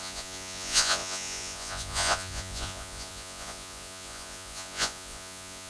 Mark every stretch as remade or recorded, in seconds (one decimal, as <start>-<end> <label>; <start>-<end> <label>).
0.0-5.7 remade